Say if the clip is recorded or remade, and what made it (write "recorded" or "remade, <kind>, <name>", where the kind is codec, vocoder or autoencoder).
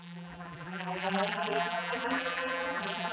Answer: remade, vocoder, BigVGAN v2